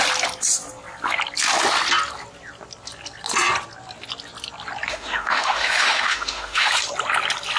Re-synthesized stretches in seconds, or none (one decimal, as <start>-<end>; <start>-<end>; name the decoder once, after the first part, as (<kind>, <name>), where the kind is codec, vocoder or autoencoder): 4.9-6.7 (autoencoder, DAC-VAE)